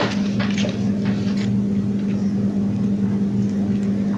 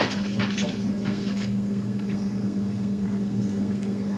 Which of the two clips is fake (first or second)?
second